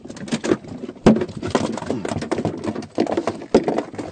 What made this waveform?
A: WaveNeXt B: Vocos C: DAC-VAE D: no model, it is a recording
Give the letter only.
D